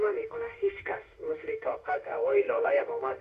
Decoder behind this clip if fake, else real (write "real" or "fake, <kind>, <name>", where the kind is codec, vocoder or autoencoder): fake, autoencoder, DAC-VAE